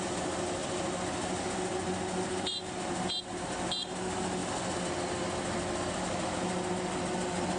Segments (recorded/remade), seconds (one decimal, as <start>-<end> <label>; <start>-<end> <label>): 0.0-7.6 recorded

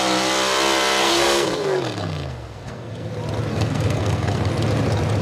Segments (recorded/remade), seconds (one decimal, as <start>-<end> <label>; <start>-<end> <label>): 0.0-1.0 recorded; 1.0-3.1 remade; 3.1-3.5 recorded; 3.5-4.5 remade; 4.5-5.2 recorded

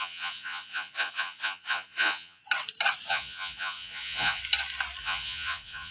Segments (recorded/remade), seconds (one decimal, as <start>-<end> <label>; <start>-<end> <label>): 0.0-2.4 remade; 2.4-3.1 recorded; 3.1-4.4 remade; 4.4-5.0 recorded; 5.0-5.9 remade

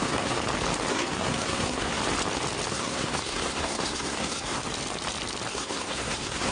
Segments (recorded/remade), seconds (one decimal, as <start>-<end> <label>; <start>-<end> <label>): 0.0-0.4 remade; 0.4-0.9 recorded; 0.9-2.0 remade; 2.0-2.7 recorded; 2.7-4.6 remade; 4.6-5.5 recorded; 5.5-6.5 remade

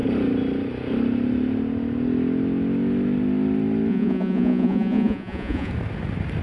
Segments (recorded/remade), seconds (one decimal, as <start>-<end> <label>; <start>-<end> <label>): 0.0-3.9 recorded; 3.9-5.7 remade; 5.7-6.4 recorded

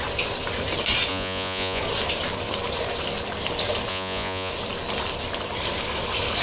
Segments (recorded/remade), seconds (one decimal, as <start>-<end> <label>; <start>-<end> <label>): 0.0-1.1 recorded; 1.1-1.8 remade; 1.8-3.9 recorded; 3.9-4.5 remade; 4.5-6.4 recorded

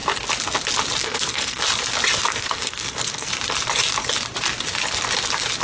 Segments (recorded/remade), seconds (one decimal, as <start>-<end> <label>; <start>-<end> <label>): 0.0-1.0 recorded; 1.0-1.6 remade; 1.6-2.3 recorded; 2.3-3.3 remade; 3.3-5.6 recorded

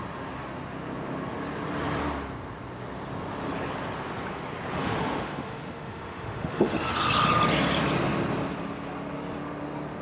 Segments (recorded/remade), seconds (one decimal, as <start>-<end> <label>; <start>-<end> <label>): 0.0-4.8 recorded; 4.8-6.9 remade; 6.9-10.0 recorded